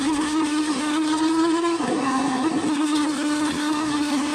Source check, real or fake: fake